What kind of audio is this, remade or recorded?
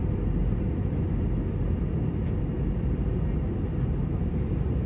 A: recorded